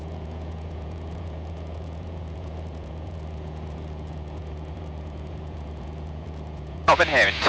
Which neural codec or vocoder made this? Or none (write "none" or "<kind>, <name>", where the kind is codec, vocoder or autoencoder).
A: vocoder, Vocos